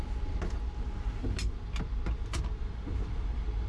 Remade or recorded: recorded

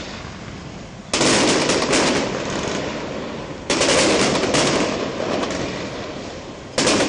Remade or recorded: recorded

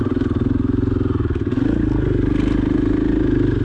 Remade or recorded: recorded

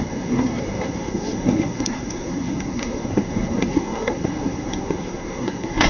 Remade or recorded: remade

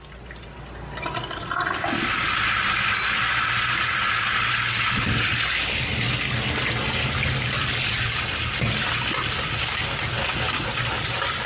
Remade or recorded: recorded